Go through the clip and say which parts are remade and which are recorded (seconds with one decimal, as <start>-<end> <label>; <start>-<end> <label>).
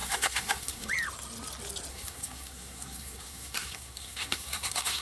0.0-0.9 remade; 0.9-1.9 recorded; 1.9-5.0 remade